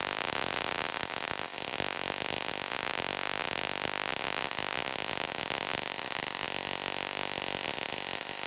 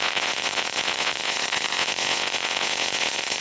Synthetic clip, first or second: second